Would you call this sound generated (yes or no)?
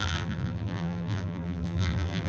yes